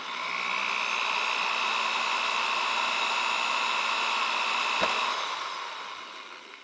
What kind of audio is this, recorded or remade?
recorded